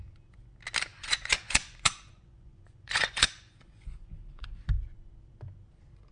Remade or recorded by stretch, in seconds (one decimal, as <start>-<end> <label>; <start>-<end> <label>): 0.0-0.9 recorded; 0.9-4.5 remade; 4.5-6.1 recorded